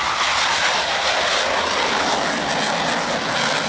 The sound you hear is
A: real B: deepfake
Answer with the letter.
A